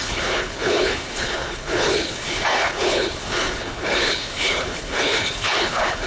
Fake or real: fake